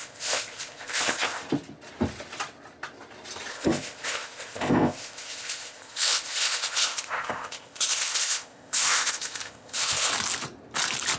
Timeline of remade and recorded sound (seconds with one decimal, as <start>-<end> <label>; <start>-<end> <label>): 0.0-1.4 remade; 1.4-3.5 recorded; 3.5-10.1 remade; 10.1-11.2 recorded